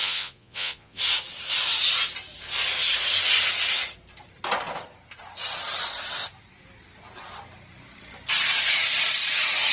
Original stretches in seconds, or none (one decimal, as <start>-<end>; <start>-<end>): 1.0-9.7